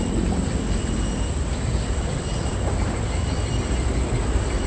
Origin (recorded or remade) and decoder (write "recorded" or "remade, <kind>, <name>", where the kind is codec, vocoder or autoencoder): remade, vocoder, BigVGAN v2